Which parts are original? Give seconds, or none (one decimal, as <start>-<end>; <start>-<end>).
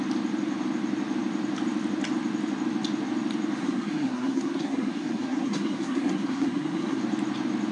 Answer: 0.0-3.6; 7.0-7.7